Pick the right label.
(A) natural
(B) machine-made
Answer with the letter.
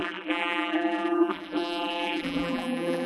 B